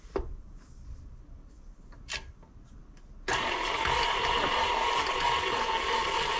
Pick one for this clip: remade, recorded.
recorded